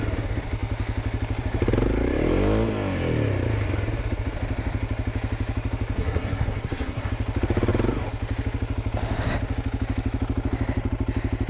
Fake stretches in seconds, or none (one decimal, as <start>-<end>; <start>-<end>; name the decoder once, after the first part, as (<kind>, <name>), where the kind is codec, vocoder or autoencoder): 6.0-7.1 (codec, SNAC)